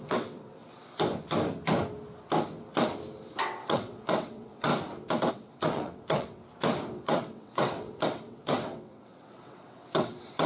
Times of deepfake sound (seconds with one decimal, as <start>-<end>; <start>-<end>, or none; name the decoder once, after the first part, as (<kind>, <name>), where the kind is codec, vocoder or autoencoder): 0.0-0.6 (vocoder, WaveNeXt); 3.4-4.7; 5.3-6.4; 7.0-10.5